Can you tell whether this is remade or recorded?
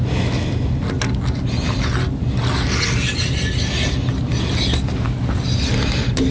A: recorded